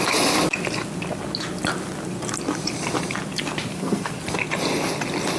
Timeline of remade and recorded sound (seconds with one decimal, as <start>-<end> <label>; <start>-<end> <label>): 0.0-3.7 recorded; 3.7-4.2 remade; 4.2-5.4 recorded